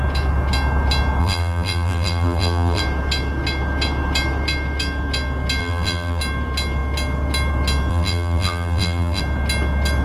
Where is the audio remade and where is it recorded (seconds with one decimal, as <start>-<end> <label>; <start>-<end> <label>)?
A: 0.0-1.2 recorded; 1.2-2.8 remade; 2.8-5.6 recorded; 5.6-6.2 remade; 6.2-7.9 recorded; 7.9-9.2 remade; 9.2-10.0 recorded